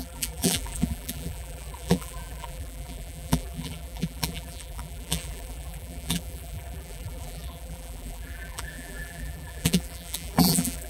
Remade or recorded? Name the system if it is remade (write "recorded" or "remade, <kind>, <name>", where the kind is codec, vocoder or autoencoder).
remade, vocoder, BigVGAN v2